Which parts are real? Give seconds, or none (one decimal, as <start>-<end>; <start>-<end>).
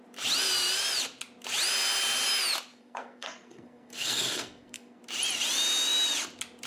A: 0.0-2.7; 5.0-6.7